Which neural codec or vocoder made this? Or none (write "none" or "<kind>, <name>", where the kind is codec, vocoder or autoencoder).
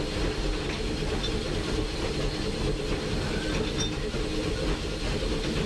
none